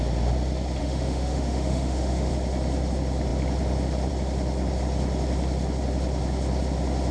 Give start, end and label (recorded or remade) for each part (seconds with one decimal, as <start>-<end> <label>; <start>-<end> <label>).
0.0-0.8 recorded; 0.8-2.3 remade; 2.3-7.1 recorded